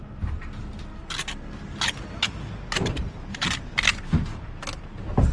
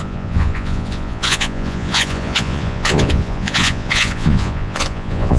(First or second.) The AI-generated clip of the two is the second